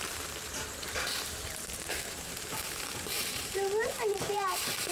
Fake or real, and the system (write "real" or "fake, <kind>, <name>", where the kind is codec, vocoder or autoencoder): fake, vocoder, BigVGAN v2